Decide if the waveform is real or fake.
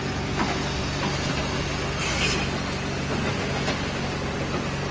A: real